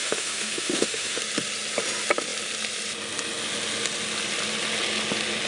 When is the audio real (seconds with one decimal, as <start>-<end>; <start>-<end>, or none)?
1.2-5.5